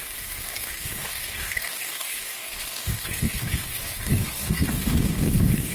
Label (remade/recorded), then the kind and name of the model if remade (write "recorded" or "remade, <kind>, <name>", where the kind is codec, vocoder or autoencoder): remade, codec, DAC